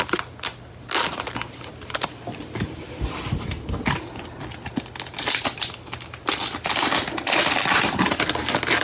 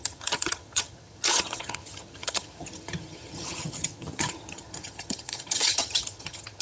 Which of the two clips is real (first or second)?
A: first